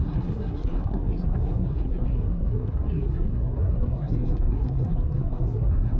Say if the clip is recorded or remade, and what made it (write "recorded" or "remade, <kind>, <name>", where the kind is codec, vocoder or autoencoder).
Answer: remade, codec, SNAC